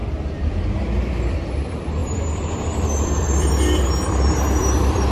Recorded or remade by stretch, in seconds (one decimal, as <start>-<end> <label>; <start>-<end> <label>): 0.0-1.2 recorded; 1.2-5.1 remade